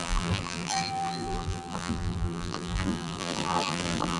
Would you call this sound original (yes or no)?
no